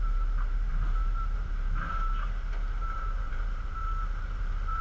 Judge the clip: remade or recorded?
remade